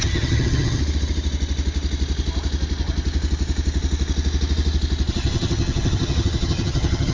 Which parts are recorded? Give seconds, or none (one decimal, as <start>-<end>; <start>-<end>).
0.8-5.1